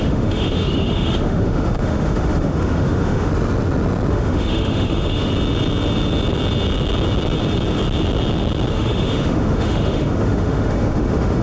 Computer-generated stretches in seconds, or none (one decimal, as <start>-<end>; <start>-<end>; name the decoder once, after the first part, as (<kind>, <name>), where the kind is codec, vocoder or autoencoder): 0.0-3.3 (autoencoder, DAC-VAE); 4.1-5.3; 8.7-11.4